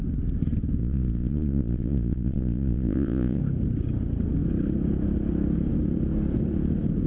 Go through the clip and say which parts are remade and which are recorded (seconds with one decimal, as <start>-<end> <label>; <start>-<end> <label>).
0.0-0.8 recorded; 0.8-3.4 remade; 3.4-7.1 recorded